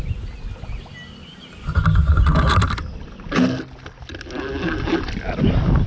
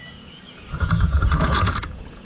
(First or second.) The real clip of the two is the first